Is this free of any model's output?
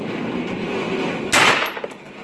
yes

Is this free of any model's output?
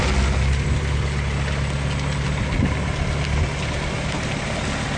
yes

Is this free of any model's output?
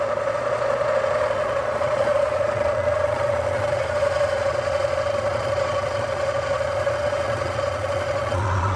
no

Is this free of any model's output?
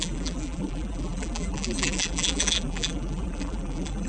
no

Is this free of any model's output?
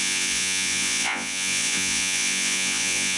no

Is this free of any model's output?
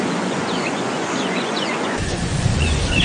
no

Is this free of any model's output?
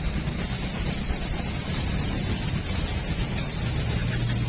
yes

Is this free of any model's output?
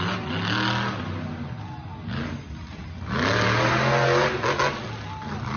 yes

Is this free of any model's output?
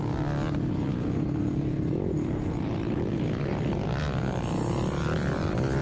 yes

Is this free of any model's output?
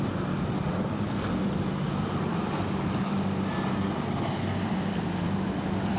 yes